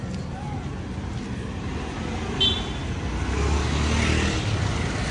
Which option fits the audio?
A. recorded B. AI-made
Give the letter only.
A